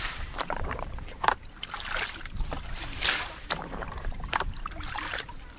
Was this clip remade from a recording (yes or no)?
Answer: yes